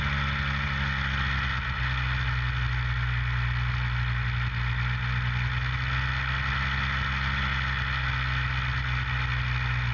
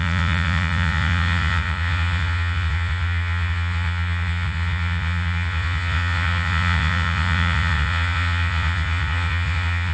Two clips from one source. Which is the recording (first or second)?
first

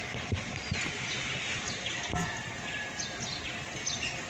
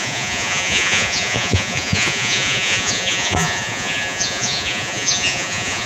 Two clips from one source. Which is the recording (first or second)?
first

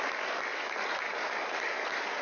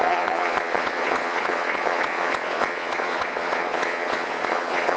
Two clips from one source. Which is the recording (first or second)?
first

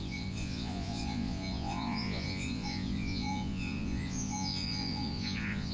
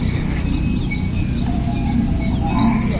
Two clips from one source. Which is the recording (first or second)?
second